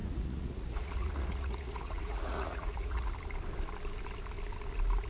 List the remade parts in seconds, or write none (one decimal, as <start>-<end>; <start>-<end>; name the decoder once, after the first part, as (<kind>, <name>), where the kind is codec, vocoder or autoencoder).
0.0-3.1 (vocoder, Vocos)